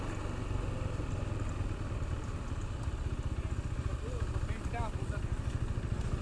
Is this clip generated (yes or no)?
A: no